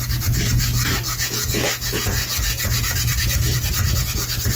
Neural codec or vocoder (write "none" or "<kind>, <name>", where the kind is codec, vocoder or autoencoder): none